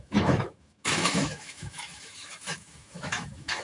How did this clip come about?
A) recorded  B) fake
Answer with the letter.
B